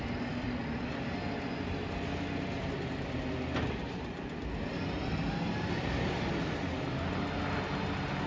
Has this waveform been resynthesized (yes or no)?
no